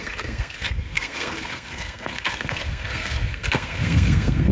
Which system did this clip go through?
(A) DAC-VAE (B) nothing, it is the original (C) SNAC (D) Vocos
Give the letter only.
C